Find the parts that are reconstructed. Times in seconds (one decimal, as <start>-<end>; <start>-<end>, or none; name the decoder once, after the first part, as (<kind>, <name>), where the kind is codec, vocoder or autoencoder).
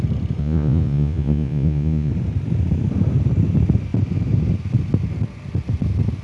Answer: 0.4-2.1 (vocoder, Vocos)